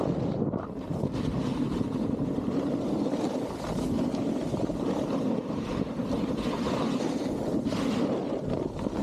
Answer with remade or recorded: recorded